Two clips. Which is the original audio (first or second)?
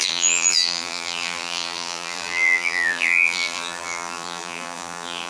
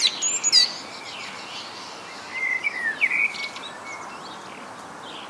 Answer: second